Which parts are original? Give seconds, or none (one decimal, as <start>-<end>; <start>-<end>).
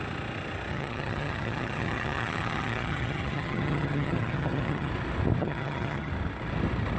0.0-0.7; 4.9-5.4; 6.1-7.0